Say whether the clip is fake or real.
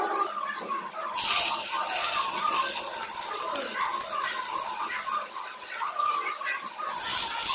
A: real